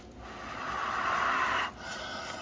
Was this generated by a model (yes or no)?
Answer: no